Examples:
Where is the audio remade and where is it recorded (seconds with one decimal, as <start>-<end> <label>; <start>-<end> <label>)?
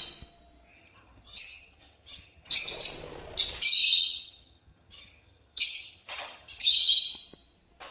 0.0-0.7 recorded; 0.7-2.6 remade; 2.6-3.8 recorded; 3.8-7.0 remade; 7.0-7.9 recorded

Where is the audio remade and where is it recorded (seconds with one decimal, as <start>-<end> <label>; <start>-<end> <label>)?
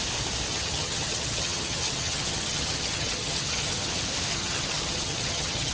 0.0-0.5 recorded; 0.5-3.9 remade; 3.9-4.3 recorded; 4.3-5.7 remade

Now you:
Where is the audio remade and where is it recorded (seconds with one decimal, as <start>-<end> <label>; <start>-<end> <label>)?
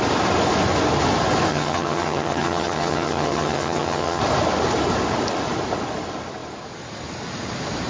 0.0-1.5 recorded; 1.5-4.2 remade; 4.2-7.9 recorded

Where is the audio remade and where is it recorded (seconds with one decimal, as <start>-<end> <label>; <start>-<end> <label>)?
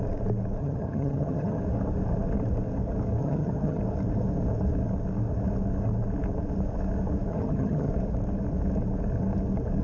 0.0-0.6 recorded; 0.6-1.6 remade; 1.6-3.2 recorded; 3.2-3.8 remade; 3.8-7.3 recorded; 7.3-7.9 remade; 7.9-9.8 recorded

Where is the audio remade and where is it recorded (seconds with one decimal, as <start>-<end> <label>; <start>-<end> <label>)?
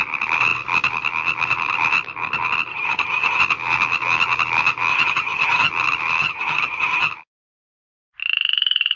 0.0-2.7 recorded; 2.7-3.4 remade; 3.4-4.9 recorded; 4.9-5.7 remade; 5.7-6.2 recorded; 6.2-7.1 remade; 7.1-9.0 recorded